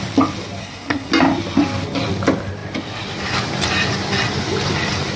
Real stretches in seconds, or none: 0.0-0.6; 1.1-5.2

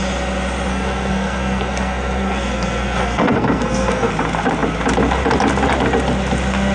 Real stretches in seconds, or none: 0.0-0.7; 4.1-6.7

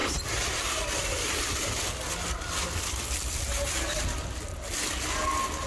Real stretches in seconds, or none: 0.0-5.7

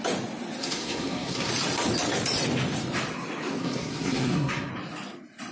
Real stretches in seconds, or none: 0.0-0.6; 1.5-3.6; 4.7-5.5